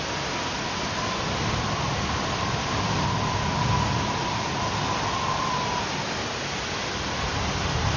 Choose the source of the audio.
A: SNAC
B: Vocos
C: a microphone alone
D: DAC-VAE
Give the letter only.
C